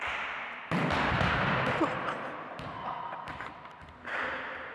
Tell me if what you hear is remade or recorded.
recorded